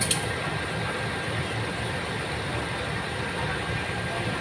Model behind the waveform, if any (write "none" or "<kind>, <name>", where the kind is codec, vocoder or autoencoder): none